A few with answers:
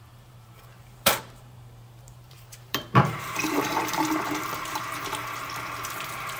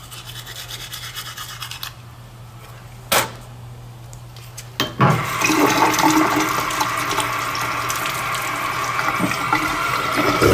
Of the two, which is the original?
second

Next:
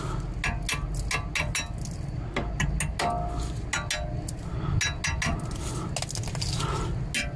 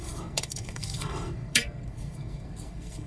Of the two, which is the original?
first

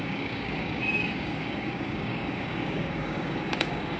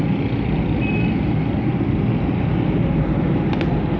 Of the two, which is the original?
second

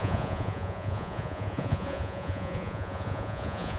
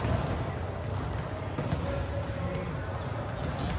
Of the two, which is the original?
second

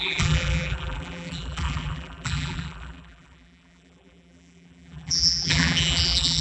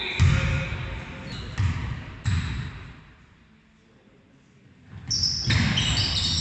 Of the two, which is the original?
second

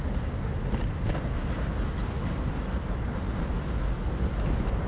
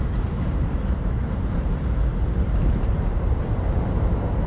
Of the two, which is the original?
first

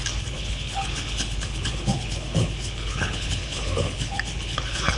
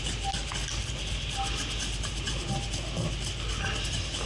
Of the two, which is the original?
second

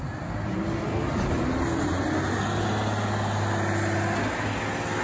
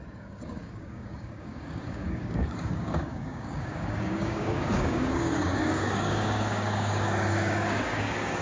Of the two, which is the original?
first